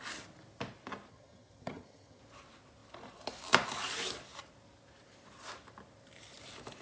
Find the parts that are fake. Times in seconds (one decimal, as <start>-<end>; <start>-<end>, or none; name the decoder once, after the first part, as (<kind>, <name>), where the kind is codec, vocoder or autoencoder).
1.1-2.2 (vocoder, HiFi-GAN)